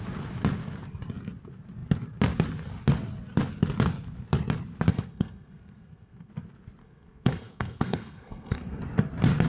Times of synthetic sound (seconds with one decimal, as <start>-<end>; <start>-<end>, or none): 4.9-6.3; 6.8-8.8